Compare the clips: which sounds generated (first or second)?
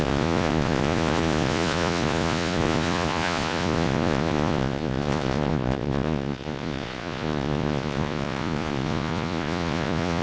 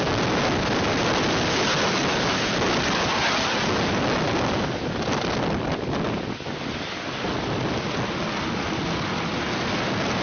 first